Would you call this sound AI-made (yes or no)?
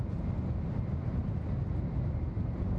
no